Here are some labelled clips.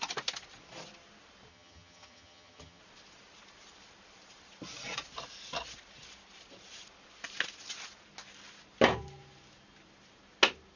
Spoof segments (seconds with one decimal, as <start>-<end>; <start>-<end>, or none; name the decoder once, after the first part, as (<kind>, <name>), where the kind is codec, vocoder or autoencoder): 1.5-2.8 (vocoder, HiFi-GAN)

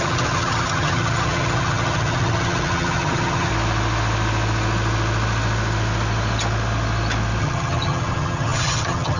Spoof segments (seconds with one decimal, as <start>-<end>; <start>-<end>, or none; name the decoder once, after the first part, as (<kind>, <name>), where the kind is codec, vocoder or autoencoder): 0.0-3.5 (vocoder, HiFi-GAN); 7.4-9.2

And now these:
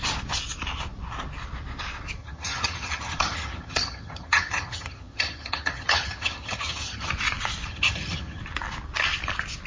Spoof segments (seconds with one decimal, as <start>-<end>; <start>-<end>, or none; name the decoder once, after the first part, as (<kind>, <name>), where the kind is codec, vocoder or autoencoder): 2.2-7.1 (vocoder, HiFi-GAN); 7.7-8.4

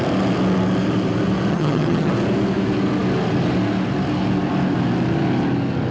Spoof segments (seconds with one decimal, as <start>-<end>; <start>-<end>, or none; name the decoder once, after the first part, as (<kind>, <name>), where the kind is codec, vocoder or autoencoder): 1.5-2.1 (vocoder, HiFi-GAN)

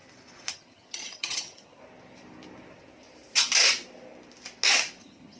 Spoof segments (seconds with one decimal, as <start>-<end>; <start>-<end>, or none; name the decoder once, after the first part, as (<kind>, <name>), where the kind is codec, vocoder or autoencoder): 0.5-1.8 (vocoder, HiFi-GAN); 5.0-5.4